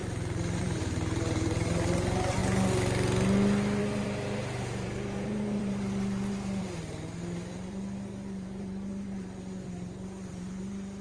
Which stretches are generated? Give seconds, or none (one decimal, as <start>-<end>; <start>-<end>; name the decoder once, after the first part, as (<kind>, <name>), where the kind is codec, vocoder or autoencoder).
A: 0.6-2.4 (vocoder, BigVGAN v2); 3.8-11.0